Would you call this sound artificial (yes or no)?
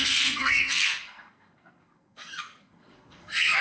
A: yes